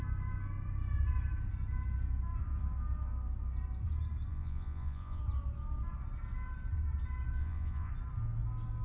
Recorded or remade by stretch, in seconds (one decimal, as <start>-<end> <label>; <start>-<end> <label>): 0.0-4.3 recorded; 4.3-5.2 remade; 5.2-7.4 recorded; 7.4-7.9 remade; 7.9-8.8 recorded